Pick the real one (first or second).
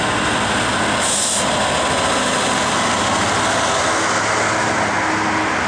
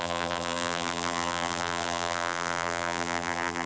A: first